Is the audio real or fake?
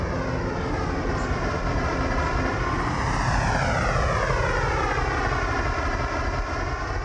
real